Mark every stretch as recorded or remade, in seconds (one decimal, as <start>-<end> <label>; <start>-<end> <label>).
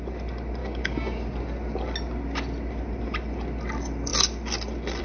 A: 0.0-0.6 recorded; 0.6-1.2 remade; 1.2-5.0 recorded